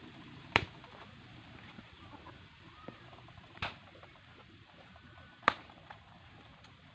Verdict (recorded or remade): remade